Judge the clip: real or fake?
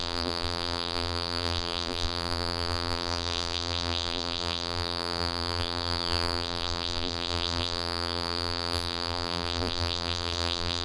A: fake